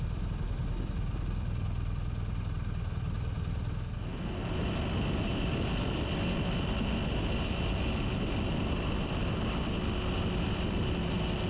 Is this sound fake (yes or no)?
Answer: no